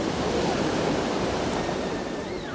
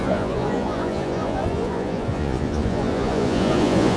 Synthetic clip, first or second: second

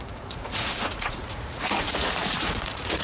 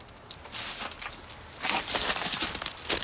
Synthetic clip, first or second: first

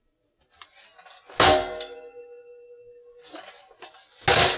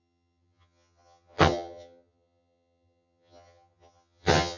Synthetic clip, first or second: second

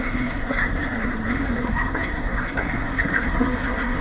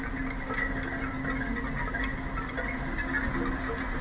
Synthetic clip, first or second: first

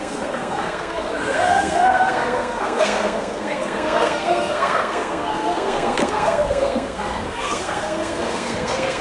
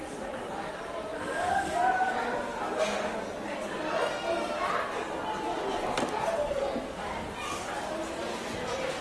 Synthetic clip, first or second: first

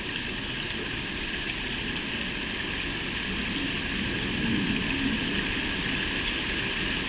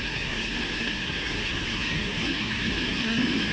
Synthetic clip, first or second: second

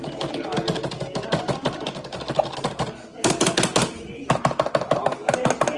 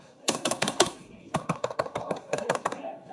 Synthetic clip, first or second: second